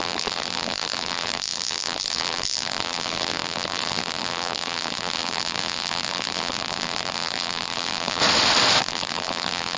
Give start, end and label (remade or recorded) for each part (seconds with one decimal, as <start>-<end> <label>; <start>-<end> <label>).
0.0-8.2 remade; 8.2-8.8 recorded; 8.8-9.8 remade